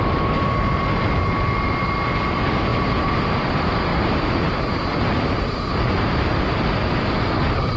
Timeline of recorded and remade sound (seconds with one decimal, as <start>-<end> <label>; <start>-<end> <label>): 0.0-2.7 recorded; 2.7-3.5 remade; 3.5-3.9 recorded; 3.9-5.6 remade; 5.6-7.8 recorded